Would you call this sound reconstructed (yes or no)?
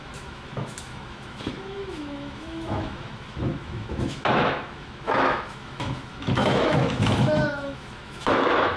yes